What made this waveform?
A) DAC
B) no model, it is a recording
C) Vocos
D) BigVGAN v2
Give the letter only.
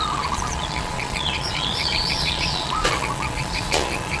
C